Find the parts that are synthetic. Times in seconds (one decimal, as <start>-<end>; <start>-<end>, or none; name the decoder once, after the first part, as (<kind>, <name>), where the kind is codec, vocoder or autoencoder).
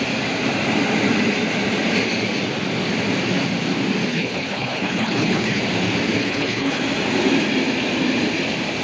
4.1-5.6 (codec, HILCodec); 6.2-6.8